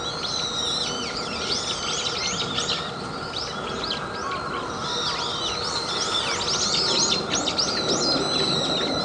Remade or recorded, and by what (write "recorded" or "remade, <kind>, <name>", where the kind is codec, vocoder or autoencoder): recorded